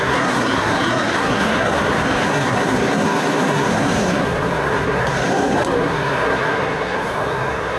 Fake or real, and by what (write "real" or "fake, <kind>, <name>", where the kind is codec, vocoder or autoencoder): fake, codec, SNAC